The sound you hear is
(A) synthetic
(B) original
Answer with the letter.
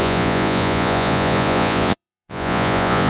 A